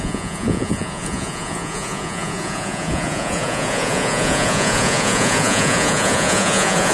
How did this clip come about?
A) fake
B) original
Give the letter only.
A